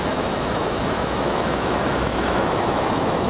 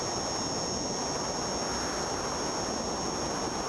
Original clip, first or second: second